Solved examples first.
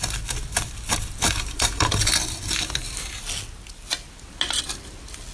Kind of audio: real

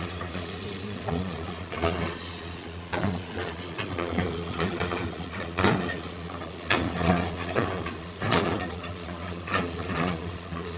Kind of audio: fake